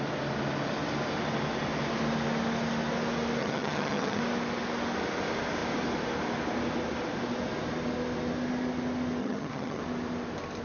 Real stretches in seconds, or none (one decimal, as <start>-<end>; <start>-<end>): 0.0-3.4; 4.2-9.2; 9.8-10.6